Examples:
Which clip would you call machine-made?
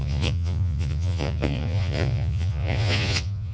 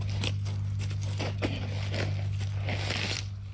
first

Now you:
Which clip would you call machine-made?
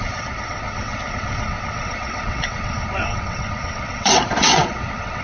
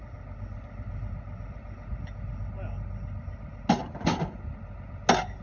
first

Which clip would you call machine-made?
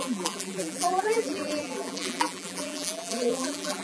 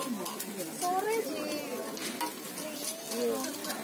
first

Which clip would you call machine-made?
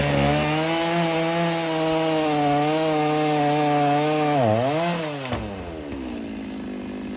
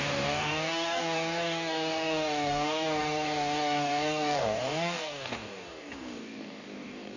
second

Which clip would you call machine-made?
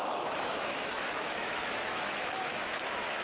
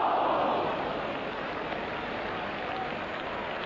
first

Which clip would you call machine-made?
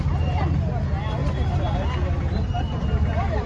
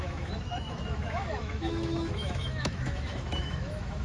second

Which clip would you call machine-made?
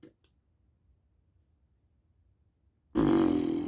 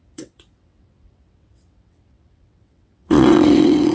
second